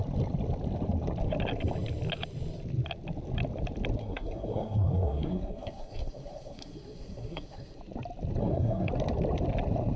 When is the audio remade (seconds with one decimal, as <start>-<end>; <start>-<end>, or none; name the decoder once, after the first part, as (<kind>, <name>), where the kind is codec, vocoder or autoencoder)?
4.0-7.8 (codec, SNAC); 8.4-8.9